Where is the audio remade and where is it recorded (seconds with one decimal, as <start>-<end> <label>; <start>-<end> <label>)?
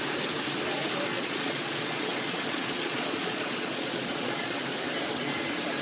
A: 0.0-1.1 recorded; 1.1-4.6 remade; 4.6-5.8 recorded